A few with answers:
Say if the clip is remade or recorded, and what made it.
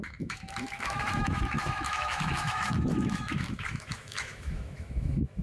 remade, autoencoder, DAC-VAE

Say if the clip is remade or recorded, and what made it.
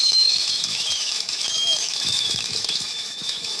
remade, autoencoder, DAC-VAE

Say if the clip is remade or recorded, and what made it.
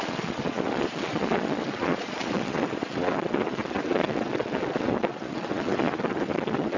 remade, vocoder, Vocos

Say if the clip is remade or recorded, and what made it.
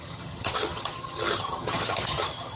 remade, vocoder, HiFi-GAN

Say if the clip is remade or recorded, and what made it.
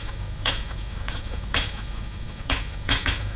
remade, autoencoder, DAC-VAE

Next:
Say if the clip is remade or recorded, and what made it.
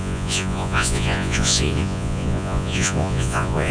remade, vocoder, Vocos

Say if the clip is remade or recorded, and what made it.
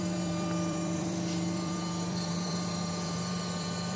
remade, vocoder, BigVGAN v2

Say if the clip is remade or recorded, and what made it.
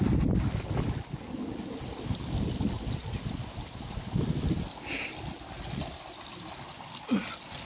recorded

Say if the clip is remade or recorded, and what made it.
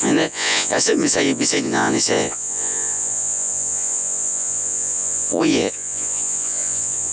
remade, vocoder, Vocos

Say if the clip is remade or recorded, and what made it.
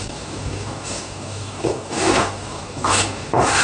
remade, codec, DAC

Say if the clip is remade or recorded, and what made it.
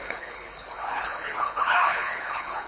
remade, codec, HILCodec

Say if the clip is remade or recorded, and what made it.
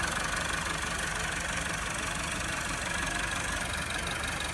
recorded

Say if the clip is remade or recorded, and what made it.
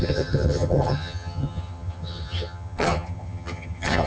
remade, vocoder, HiFi-GAN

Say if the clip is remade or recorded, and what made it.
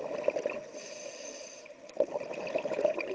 recorded